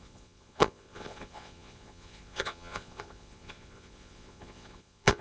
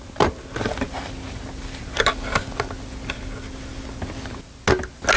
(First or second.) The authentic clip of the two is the second